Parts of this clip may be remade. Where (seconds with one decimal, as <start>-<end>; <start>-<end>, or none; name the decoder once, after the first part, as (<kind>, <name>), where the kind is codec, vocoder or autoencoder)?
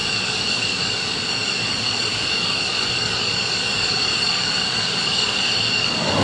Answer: 0.0-6.2 (codec, DAC)